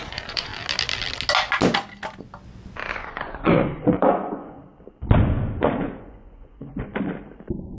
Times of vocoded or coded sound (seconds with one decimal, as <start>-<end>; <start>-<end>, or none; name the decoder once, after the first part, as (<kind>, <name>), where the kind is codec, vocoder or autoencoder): 0.0-0.5 (vocoder, Vocos); 2.9-4.6; 5.2-6.9